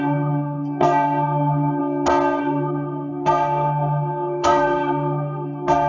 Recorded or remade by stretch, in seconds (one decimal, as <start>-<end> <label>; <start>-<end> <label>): 0.0-1.8 remade; 1.8-2.4 recorded; 2.4-5.9 remade

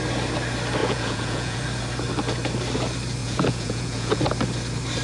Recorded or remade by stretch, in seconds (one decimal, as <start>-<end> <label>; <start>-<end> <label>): 0.0-0.8 recorded; 0.8-1.6 remade; 1.6-3.2 recorded; 3.2-4.2 remade; 4.2-5.0 recorded

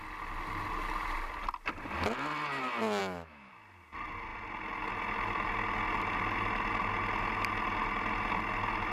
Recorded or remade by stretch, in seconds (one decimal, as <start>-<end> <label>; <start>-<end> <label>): 0.0-3.0 recorded; 3.0-3.5 remade; 3.5-8.9 recorded

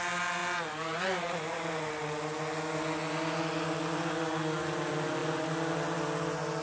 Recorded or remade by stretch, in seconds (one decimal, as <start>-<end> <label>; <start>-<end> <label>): 0.0-6.6 recorded

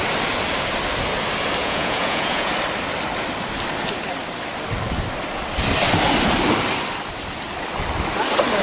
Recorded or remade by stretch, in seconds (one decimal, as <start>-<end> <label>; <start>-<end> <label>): 0.0-1.6 recorded; 1.6-2.5 remade; 2.5-8.6 recorded